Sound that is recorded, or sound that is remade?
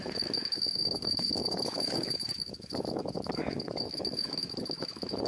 remade